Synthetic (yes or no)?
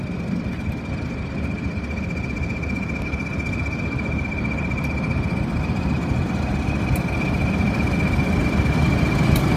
no